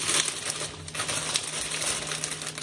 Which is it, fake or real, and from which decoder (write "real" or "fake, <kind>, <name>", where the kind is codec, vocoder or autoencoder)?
real